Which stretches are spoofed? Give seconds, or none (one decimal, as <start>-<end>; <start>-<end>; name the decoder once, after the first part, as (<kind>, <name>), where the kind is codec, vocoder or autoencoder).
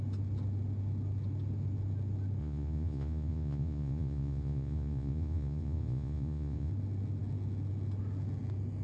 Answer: 2.4-6.7 (vocoder, Vocos)